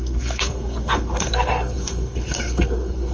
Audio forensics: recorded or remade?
remade